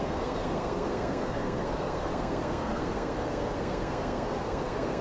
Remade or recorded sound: remade